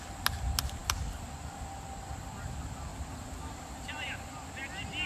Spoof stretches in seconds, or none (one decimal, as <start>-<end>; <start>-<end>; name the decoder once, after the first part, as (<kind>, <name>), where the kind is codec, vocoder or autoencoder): 2.9-4.3 (vocoder, BigVGAN v2)